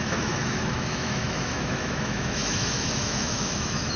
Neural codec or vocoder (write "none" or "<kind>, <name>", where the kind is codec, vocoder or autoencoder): autoencoder, DAC-VAE